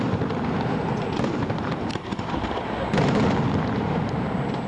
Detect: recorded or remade remade